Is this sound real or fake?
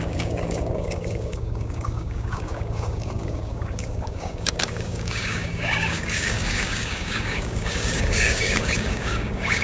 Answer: fake